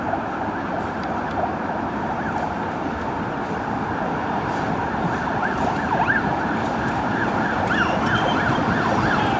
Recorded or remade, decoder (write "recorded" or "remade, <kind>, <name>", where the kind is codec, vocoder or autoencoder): remade, vocoder, BigVGAN v2